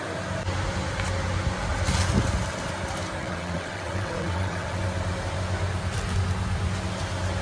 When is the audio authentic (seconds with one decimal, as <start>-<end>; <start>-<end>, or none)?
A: 0.0-3.2; 4.8-7.4